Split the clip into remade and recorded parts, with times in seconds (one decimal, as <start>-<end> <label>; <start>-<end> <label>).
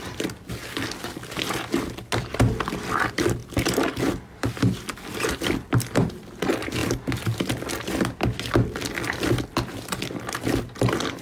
0.0-11.2 recorded